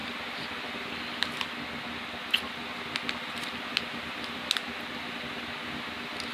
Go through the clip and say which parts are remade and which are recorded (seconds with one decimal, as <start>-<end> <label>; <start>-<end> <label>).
0.0-6.3 recorded